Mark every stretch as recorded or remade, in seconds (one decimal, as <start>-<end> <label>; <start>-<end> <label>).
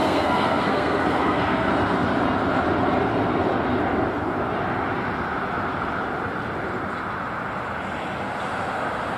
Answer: 0.0-1.7 remade; 1.7-9.2 recorded